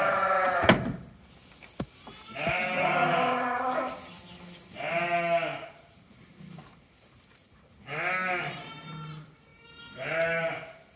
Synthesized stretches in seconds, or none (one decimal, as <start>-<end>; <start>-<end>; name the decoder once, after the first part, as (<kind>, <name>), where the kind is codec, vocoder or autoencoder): 5.5-6.1 (vocoder, BigVGAN v2); 9.5-10.5